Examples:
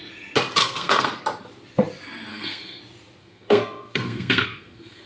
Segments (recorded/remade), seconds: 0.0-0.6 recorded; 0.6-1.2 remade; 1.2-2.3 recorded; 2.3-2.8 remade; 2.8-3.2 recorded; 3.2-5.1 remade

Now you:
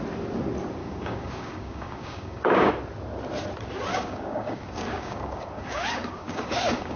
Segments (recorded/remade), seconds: 0.0-0.8 recorded; 0.8-2.7 remade; 2.7-3.9 recorded; 3.9-7.0 remade

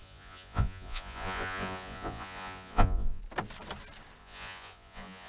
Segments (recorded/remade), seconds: 0.0-3.2 remade; 3.2-4.2 recorded; 4.2-5.3 remade

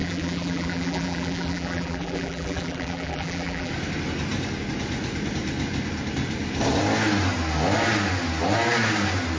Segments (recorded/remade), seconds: 0.0-3.7 remade; 3.7-9.4 recorded

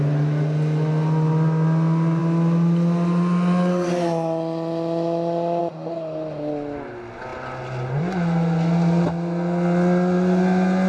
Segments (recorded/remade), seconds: 0.0-10.9 recorded